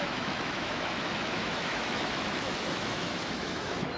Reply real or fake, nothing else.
fake